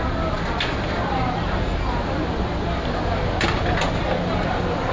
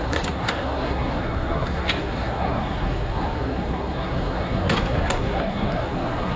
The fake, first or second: second